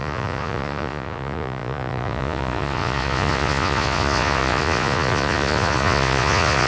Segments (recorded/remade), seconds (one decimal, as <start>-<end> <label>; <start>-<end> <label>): 0.0-6.7 remade